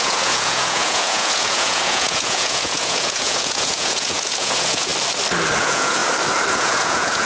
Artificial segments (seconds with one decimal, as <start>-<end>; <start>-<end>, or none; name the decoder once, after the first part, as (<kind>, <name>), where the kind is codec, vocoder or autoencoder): 0.0-4.9 (vocoder, Vocos); 5.6-6.0; 6.5-7.3